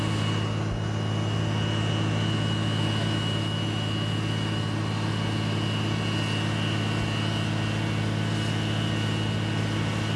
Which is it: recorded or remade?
recorded